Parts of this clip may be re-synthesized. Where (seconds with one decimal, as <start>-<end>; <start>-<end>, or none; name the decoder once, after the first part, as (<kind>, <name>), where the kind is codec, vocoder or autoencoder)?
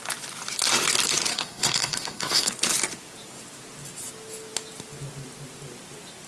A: 1.3-2.5 (codec, SNAC)